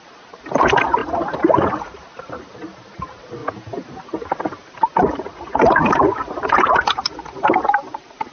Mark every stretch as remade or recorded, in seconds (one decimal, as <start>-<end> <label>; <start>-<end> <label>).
0.0-3.4 remade; 3.4-4.4 recorded; 4.4-8.3 remade

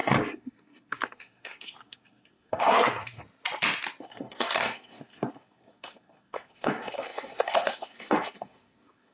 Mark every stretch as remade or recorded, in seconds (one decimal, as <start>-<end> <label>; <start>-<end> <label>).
0.0-3.2 remade; 3.2-4.0 recorded; 4.0-9.1 remade

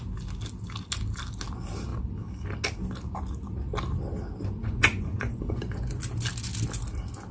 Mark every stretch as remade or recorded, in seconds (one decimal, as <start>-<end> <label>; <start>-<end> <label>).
0.0-4.6 recorded; 4.6-6.0 remade; 6.0-7.3 recorded